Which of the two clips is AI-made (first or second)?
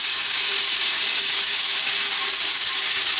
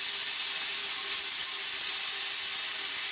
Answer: first